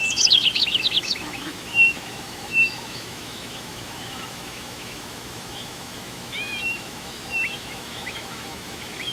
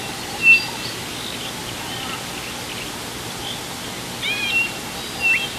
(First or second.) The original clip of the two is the second